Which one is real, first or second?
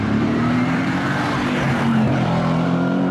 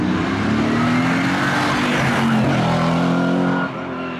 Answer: second